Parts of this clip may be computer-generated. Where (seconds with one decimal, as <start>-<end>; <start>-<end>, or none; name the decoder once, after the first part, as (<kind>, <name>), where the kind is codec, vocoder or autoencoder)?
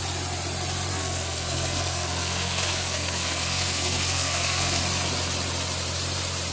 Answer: 0.9-4.8 (codec, SNAC)